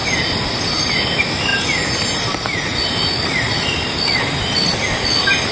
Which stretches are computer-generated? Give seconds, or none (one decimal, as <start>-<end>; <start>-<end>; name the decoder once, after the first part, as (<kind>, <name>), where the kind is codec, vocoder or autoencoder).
none